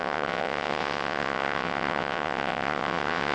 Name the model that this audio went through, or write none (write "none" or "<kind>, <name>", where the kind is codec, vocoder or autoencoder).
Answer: vocoder, WaveNeXt